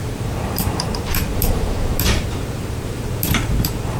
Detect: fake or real fake